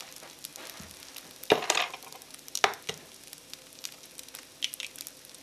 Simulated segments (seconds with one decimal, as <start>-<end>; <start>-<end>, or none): none